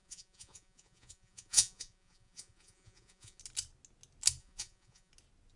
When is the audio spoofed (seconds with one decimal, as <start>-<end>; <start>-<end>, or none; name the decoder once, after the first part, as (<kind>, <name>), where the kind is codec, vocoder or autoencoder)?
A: 0.0-3.4 (vocoder, Vocos); 4.4-5.1